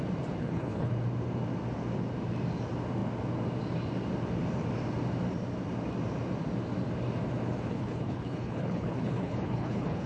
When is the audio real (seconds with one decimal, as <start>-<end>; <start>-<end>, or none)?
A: 0.0-0.4; 0.9-7.7